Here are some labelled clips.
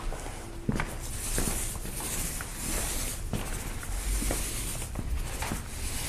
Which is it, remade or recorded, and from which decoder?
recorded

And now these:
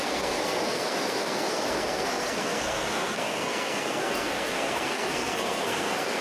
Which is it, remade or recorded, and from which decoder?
remade, codec, SNAC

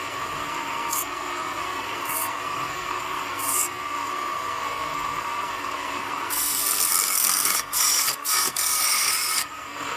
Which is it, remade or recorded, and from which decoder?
remade, codec, SNAC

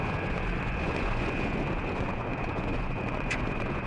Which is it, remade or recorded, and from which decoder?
remade, vocoder, Vocos